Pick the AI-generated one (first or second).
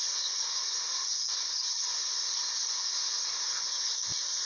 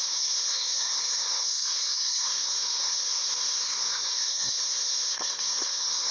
second